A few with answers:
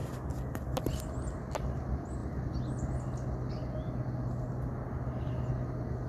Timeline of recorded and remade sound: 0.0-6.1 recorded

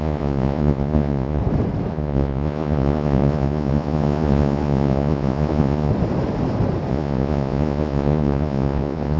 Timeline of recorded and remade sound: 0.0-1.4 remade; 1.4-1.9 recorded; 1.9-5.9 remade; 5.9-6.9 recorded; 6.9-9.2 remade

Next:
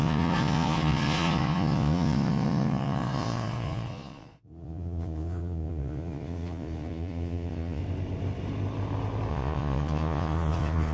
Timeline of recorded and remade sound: 0.0-7.8 remade; 7.8-9.3 recorded; 9.3-10.9 remade

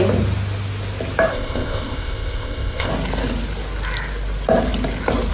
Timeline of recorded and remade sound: 0.0-1.3 recorded; 1.3-2.9 remade; 2.9-5.3 recorded